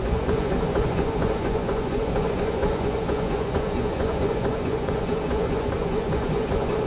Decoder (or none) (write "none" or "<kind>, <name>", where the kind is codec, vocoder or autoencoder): vocoder, Vocos